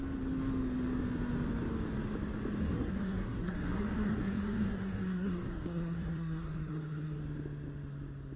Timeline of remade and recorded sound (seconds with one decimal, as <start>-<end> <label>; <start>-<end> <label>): 0.0-2.6 recorded; 2.6-7.2 remade; 7.2-8.4 recorded